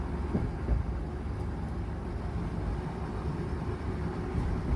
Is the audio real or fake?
real